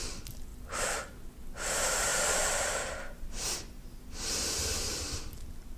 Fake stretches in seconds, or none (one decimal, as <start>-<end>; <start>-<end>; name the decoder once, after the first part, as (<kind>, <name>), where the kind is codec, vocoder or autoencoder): 2.1-5.1 (vocoder, BigVGAN v2)